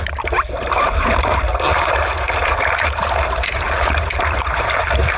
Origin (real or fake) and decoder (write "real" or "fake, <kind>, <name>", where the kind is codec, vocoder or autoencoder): fake, vocoder, BigVGAN v2